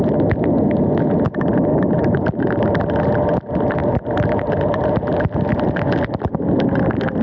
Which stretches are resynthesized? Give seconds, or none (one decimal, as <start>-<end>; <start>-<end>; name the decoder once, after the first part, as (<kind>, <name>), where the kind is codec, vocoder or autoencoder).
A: 1.7-2.8 (vocoder, BigVGAN v2); 3.8-5.4